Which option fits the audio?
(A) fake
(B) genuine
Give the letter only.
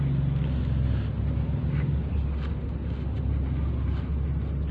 B